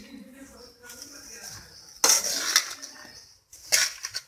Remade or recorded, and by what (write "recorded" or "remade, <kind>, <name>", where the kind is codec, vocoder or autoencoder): recorded